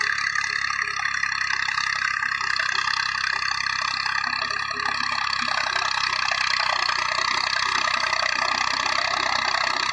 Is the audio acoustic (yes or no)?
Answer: yes